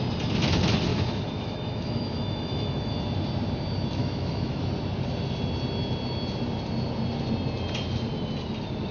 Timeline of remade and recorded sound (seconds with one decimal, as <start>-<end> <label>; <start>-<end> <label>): 0.0-0.9 recorded; 0.9-2.9 remade; 2.9-4.0 recorded; 4.0-4.6 remade; 4.6-8.9 recorded